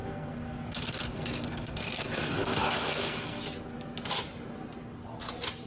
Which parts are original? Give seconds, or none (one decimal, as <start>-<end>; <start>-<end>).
3.4-5.7